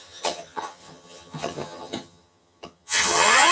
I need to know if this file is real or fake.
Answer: fake